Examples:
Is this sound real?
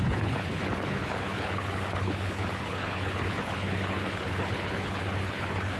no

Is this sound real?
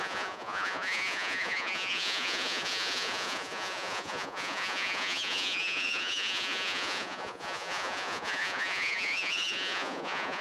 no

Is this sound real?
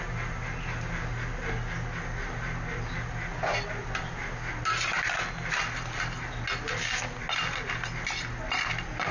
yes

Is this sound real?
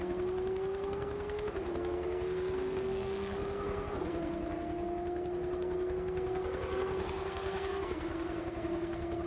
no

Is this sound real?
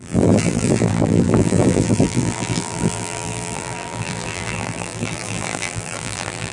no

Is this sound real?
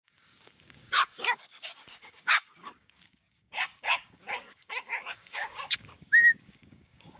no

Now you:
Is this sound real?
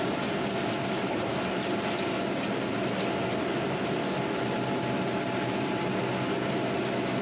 yes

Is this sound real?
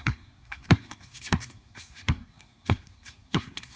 no